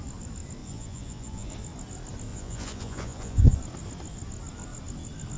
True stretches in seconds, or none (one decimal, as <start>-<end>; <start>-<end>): 0.0-0.6; 1.5-2.3; 3.6-5.4